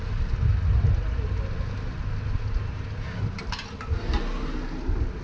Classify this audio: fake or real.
real